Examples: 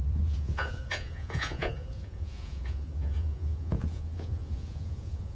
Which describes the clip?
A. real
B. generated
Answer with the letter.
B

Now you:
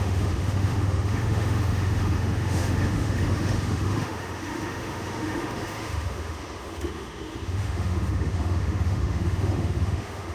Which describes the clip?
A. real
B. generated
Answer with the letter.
B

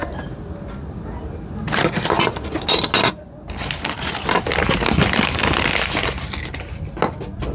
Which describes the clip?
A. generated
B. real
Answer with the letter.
B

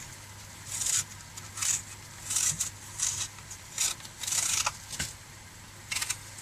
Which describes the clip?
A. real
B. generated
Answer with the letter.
A